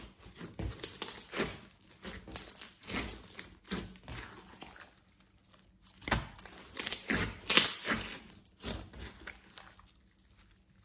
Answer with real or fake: real